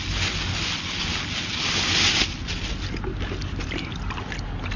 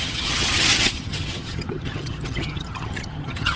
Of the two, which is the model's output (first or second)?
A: second